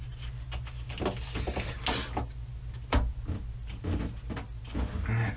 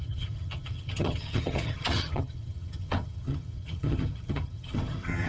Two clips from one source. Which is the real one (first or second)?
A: first